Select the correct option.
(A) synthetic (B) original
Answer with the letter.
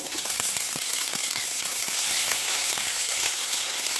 A